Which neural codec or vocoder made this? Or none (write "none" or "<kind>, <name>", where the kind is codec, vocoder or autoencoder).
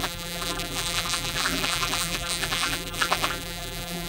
vocoder, BigVGAN v2